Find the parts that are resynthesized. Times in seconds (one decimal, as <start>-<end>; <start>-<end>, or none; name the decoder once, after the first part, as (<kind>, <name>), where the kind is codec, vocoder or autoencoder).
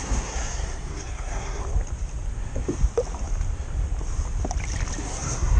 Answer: 0.0-1.6 (codec, SNAC); 5.0-5.6